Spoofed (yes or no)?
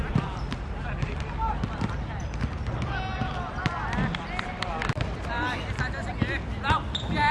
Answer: no